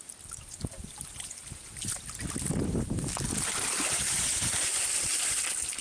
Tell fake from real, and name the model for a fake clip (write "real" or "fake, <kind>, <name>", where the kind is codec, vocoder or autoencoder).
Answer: real